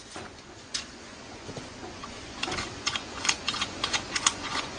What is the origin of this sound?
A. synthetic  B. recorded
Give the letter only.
A